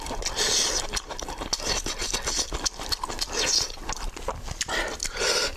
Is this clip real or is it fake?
real